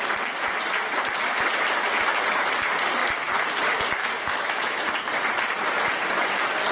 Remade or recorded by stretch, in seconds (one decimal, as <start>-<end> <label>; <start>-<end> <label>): 0.0-4.0 recorded; 4.0-4.9 remade; 4.9-6.7 recorded